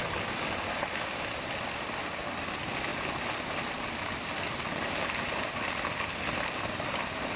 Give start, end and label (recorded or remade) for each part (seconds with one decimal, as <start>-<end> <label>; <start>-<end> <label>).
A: 0.0-7.4 recorded